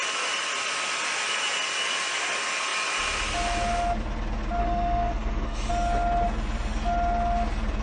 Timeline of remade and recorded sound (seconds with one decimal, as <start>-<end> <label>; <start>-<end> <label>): 0.0-4.6 recorded; 4.6-5.7 remade; 5.7-7.8 recorded